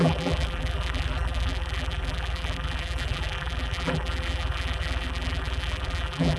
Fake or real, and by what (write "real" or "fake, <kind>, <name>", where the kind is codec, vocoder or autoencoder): fake, vocoder, BigVGAN v2